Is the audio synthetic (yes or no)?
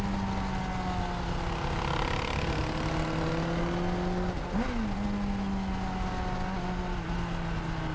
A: no